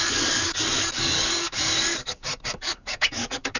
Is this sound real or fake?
fake